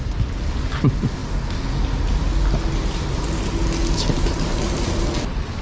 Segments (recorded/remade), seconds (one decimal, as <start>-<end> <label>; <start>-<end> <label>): 0.0-5.6 recorded